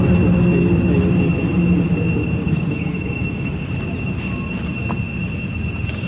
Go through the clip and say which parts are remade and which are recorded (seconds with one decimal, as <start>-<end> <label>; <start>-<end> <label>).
0.0-2.4 recorded; 2.4-3.7 remade; 3.7-6.1 recorded